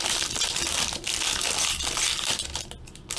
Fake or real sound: real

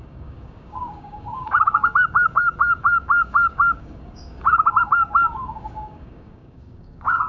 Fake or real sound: fake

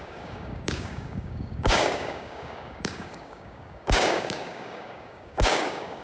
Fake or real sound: fake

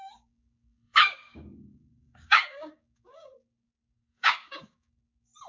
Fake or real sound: fake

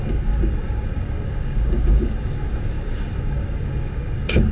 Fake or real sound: fake